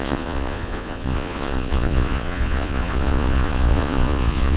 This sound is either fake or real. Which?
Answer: fake